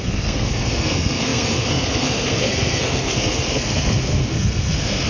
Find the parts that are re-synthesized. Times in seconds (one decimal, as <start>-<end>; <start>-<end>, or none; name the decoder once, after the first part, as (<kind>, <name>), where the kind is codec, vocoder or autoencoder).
0.0-5.1 (codec, SNAC)